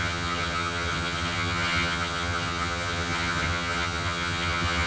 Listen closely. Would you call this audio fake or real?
fake